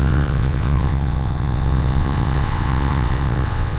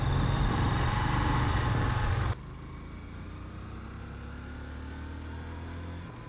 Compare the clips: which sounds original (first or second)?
second